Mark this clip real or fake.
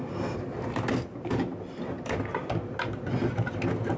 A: real